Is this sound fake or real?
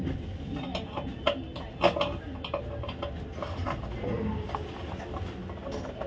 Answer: real